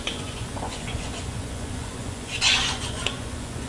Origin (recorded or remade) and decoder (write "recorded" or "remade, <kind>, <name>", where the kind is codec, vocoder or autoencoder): remade, vocoder, Vocos